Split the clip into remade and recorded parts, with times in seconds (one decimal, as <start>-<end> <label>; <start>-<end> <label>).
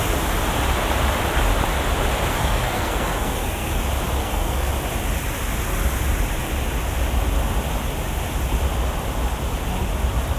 0.0-2.3 recorded; 2.3-3.8 remade; 3.8-4.2 recorded; 4.2-4.7 remade; 4.7-10.4 recorded